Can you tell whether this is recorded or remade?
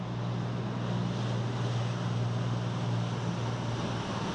recorded